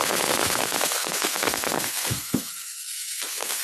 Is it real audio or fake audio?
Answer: fake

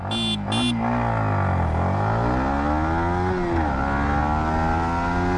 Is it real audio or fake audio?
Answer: real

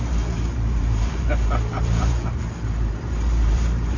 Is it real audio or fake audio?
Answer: fake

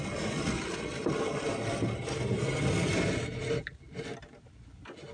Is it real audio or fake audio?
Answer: real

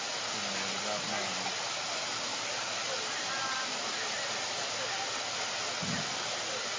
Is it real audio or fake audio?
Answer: real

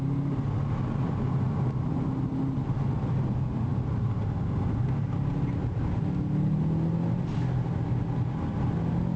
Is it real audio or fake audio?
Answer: real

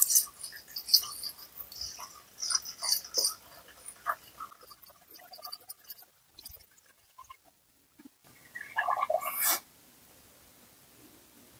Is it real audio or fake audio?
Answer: real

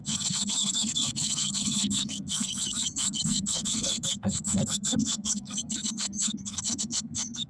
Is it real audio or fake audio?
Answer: fake